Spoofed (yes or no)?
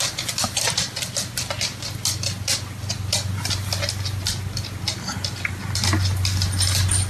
no